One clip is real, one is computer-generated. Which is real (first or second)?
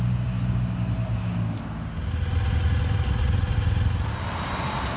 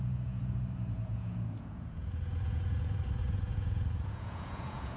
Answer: first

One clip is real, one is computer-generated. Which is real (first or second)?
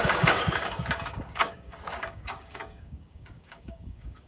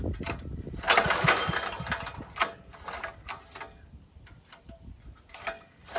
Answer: second